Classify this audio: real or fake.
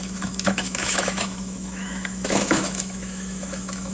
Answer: fake